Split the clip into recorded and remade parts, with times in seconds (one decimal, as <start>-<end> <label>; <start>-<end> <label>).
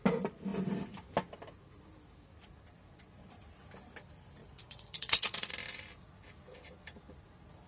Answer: 0.0-4.4 recorded; 4.4-5.5 remade; 5.5-7.7 recorded